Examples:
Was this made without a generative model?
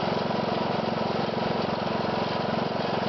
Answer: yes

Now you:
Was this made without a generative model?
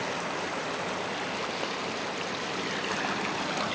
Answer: yes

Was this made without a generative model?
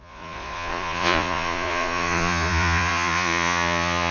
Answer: no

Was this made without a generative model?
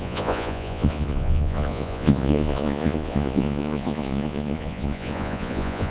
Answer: no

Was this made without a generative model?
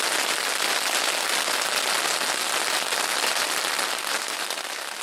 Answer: yes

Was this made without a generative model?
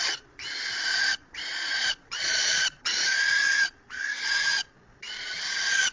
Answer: no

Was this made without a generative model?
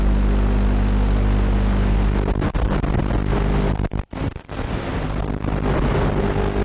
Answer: yes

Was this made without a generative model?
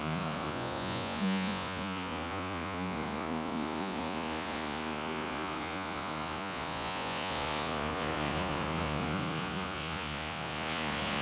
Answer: no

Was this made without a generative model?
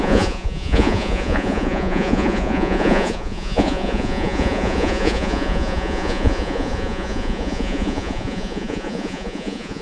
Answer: no